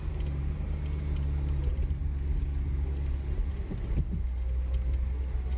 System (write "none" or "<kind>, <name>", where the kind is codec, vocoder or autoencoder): none